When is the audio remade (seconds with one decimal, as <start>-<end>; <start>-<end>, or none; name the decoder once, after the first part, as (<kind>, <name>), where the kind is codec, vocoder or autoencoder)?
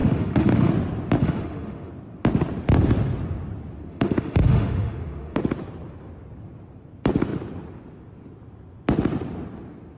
0.0-0.7 (autoencoder, DAC-VAE); 1.2-1.9; 3.9-5.4